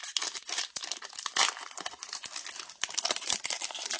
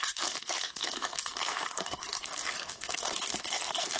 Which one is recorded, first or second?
first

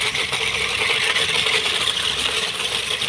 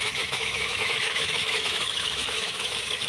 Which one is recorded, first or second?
first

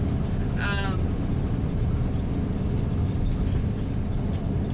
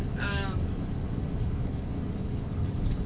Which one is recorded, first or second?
first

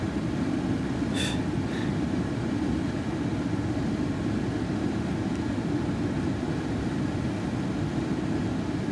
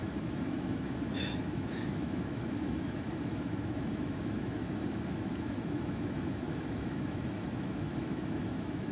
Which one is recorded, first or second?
first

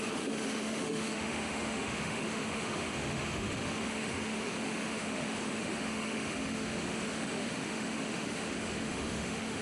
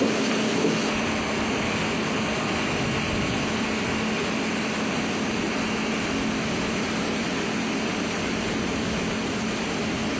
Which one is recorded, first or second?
second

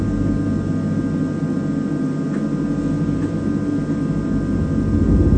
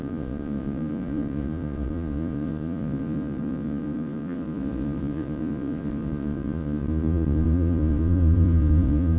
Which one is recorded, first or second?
first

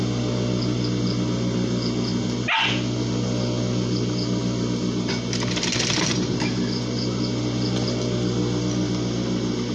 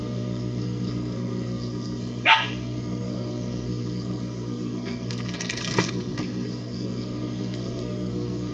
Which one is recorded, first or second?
first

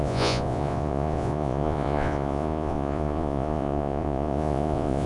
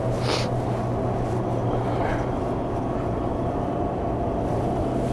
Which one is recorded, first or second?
second